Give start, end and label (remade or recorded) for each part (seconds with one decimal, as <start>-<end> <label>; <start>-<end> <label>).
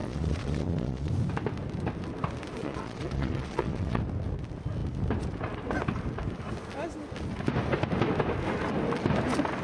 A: 0.0-1.1 remade; 1.1-2.6 recorded; 2.6-4.0 remade; 4.0-9.6 recorded